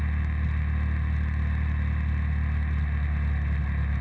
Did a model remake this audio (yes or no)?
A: no